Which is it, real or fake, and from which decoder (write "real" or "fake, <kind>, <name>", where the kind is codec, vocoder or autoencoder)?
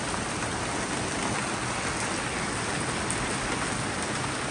real